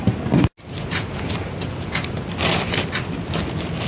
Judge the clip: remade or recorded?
recorded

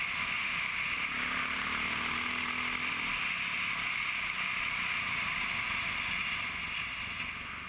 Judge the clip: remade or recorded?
recorded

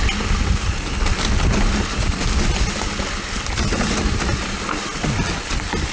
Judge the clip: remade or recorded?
recorded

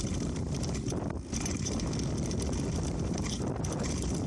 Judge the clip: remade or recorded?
recorded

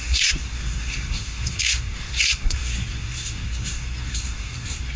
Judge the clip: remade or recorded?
remade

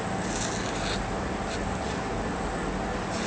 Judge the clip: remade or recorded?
recorded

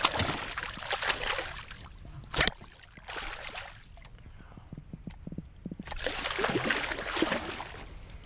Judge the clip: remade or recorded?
recorded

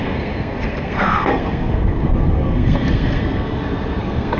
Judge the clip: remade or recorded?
remade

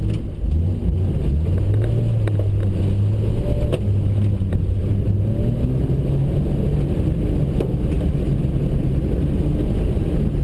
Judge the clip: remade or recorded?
recorded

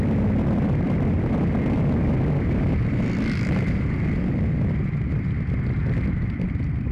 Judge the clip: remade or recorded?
remade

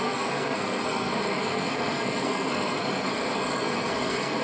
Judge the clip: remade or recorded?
remade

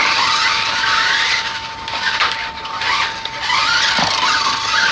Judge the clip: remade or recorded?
remade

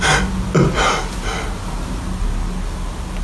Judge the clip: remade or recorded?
recorded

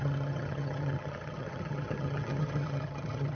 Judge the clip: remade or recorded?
remade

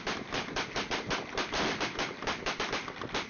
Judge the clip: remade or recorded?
remade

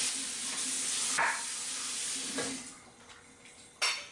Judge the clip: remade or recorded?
recorded